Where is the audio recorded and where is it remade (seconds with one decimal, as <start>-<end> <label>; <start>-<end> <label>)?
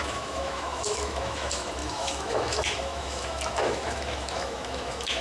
0.0-5.2 remade